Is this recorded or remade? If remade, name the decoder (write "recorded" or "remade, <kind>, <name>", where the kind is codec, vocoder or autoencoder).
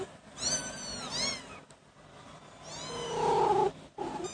recorded